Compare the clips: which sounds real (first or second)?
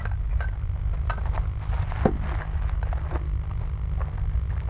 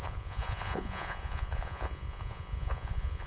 first